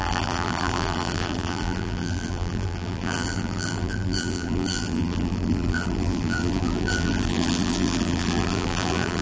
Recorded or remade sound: remade